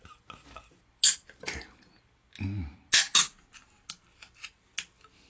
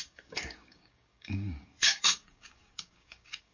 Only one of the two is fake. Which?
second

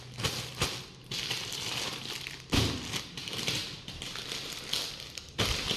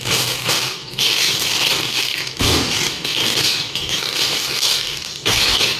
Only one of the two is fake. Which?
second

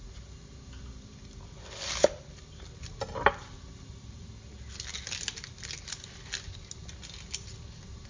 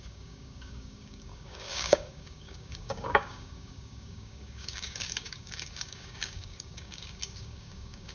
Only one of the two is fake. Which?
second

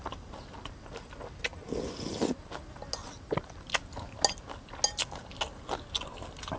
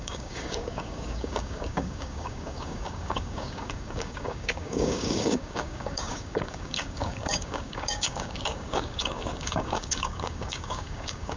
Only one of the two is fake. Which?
second